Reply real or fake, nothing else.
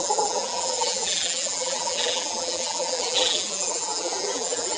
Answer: fake